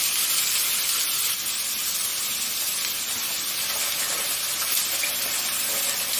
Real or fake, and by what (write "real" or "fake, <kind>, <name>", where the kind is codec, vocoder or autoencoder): real